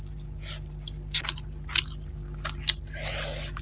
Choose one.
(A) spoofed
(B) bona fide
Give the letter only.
B